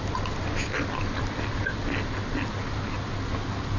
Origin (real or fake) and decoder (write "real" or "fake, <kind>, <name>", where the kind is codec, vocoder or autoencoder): real